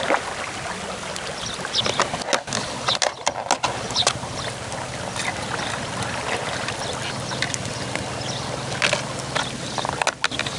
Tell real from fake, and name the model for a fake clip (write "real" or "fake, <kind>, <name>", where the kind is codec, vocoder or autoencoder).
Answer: real